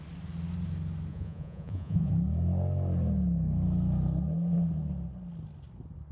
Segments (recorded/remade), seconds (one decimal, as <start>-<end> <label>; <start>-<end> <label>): 0.0-1.1 recorded; 1.1-2.1 remade; 2.1-6.1 recorded